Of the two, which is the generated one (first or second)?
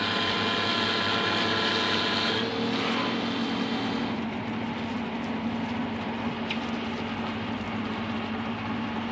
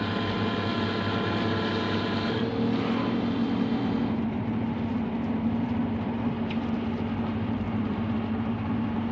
second